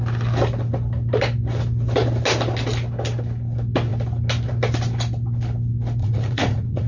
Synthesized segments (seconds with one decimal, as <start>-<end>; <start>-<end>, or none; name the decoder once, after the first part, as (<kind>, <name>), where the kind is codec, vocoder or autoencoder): 6.0-6.9 (vocoder, Vocos)